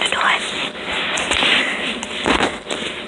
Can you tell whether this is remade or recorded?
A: recorded